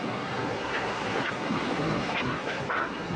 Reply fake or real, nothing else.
fake